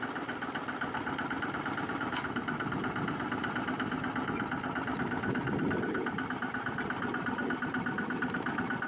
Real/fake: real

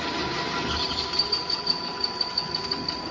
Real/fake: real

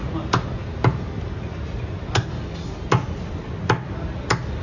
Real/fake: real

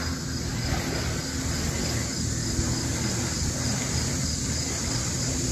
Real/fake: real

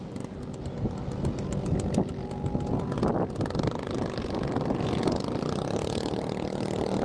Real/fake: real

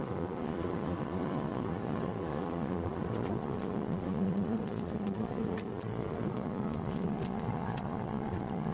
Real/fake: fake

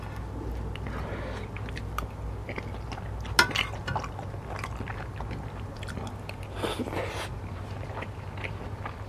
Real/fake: real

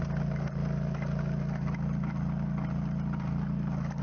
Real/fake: real